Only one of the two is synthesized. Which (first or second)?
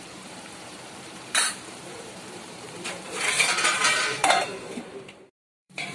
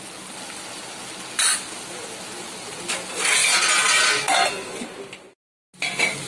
first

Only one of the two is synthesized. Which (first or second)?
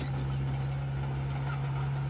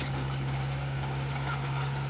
second